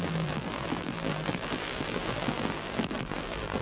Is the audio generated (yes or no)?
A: yes